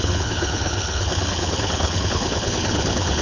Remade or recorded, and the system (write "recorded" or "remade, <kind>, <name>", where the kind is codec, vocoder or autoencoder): remade, codec, HILCodec